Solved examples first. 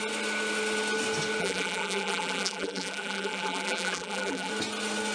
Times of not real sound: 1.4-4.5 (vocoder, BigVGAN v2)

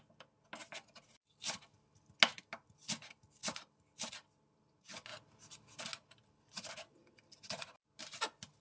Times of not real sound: 3.4-4.1 (vocoder, BigVGAN v2)

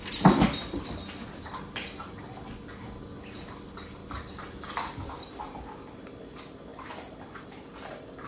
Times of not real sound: 6.7-7.4 (vocoder, BigVGAN v2)

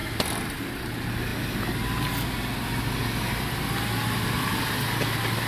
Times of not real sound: none

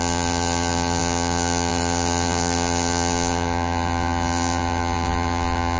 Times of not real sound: 0.0-5.8 (vocoder, BigVGAN v2)